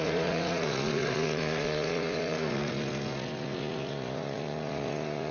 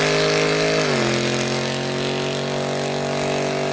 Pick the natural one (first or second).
second